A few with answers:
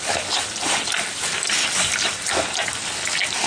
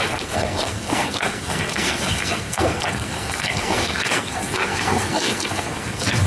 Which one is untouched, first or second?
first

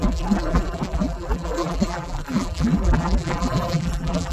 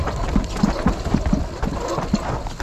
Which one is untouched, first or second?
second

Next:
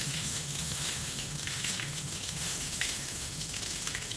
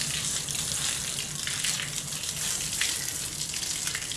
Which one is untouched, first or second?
second